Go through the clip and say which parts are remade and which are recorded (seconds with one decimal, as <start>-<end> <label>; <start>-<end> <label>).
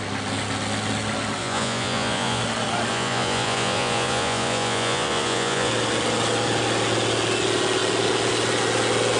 0.0-1.4 recorded; 1.4-2.4 remade; 2.4-2.9 recorded; 2.9-5.7 remade; 5.7-9.2 recorded